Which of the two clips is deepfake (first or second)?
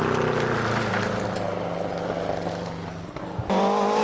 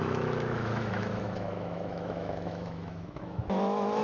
second